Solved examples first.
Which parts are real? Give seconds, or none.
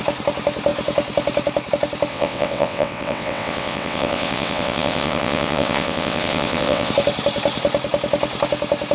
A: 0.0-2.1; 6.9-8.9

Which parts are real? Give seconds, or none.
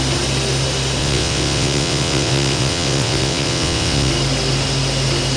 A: 0.0-1.0; 4.1-5.4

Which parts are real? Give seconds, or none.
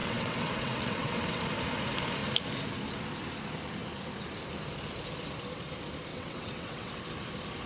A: 1.4-6.1; 7.0-7.7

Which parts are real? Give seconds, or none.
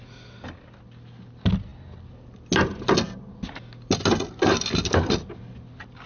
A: 0.0-6.1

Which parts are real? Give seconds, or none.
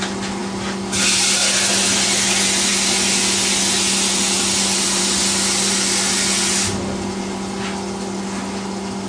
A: 0.0-9.1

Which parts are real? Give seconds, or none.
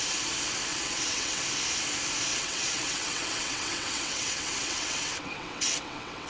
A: 0.0-0.7; 1.4-2.3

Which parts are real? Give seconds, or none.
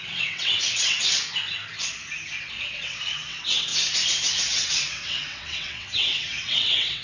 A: 1.2-2.7; 3.7-4.4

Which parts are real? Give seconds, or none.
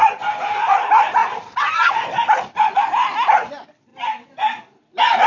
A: 0.0-5.3